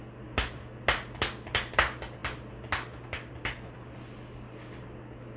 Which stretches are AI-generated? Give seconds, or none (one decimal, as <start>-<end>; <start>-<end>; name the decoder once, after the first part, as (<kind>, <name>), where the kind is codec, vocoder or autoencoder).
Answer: none